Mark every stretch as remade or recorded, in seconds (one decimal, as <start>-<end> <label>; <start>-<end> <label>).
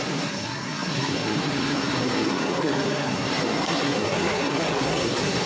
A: 0.0-5.5 remade